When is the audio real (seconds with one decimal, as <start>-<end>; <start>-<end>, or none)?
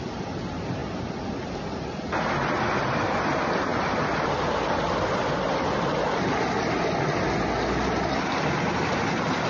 0.0-9.5